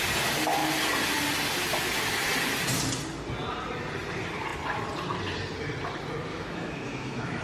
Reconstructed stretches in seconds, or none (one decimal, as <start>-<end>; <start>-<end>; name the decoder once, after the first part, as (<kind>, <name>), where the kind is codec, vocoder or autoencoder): 6.3-7.4 (autoencoder, DAC-VAE)